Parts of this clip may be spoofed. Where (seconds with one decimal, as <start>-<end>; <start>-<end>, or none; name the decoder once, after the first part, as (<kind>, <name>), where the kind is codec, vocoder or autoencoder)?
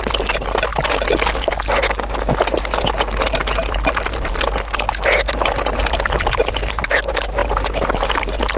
7.4-8.2 (vocoder, BigVGAN v2)